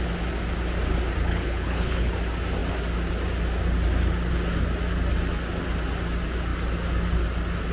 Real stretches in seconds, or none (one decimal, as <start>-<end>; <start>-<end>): 0.0-1.3; 2.1-7.7